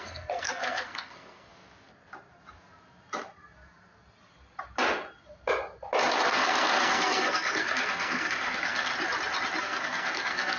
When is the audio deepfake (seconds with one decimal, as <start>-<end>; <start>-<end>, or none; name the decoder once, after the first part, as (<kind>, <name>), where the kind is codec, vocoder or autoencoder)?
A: 0.0-1.5 (codec, SNAC); 6.3-8.9; 9.6-10.6